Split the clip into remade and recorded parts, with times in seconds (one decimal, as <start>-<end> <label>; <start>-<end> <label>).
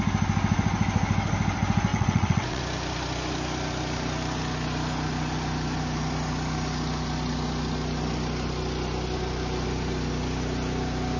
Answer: 0.0-1.9 recorded; 1.9-2.6 remade; 2.6-11.2 recorded